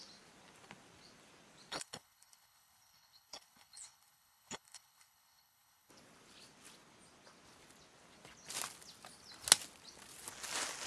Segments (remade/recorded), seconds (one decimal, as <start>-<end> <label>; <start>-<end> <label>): 0.0-1.7 recorded; 1.7-5.9 remade; 5.9-10.9 recorded